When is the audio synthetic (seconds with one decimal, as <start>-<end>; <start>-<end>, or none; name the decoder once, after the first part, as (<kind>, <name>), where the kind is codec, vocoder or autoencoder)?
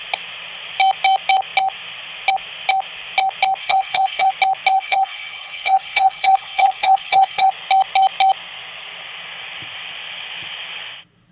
3.6-4.3 (codec, HILCodec); 4.7-7.5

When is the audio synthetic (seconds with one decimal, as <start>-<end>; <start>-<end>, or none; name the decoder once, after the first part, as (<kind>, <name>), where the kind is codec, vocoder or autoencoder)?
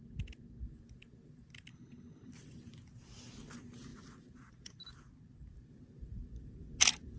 1.7-2.3 (codec, HILCodec)